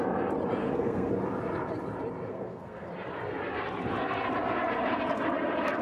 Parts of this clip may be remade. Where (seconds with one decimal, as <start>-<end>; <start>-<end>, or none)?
0.6-1.1; 2.3-2.9